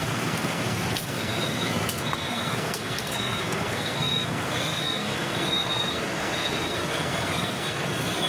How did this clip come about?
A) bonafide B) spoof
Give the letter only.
B